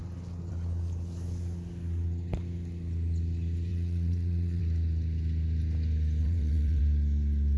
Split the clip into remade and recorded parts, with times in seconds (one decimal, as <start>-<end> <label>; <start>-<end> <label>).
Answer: 0.0-3.7 recorded; 3.7-4.6 remade; 4.6-6.2 recorded; 6.2-6.8 remade; 6.8-7.6 recorded